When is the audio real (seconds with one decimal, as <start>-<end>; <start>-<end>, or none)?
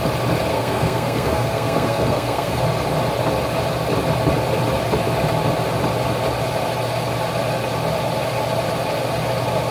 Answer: 0.0-0.5; 2.6-9.7